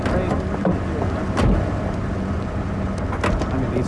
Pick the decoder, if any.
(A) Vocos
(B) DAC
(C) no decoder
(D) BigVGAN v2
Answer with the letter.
C